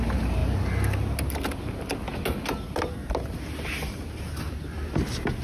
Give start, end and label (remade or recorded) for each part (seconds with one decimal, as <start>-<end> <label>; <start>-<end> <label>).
0.0-5.4 recorded